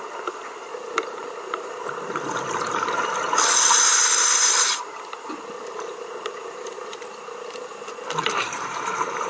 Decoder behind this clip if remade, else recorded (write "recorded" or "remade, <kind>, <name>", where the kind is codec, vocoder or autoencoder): remade, vocoder, BigVGAN v2